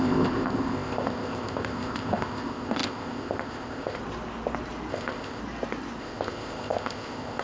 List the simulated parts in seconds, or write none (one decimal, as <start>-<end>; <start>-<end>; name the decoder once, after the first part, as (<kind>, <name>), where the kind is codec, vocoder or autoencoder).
0.0-4.0 (codec, ZipCodec); 4.9-5.4; 6.0-7.4